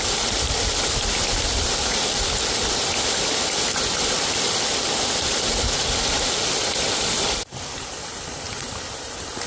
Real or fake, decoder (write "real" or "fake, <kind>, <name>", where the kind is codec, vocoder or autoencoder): real